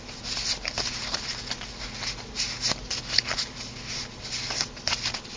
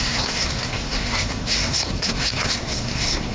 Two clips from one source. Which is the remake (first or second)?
second